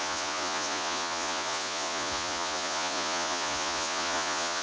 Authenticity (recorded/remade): remade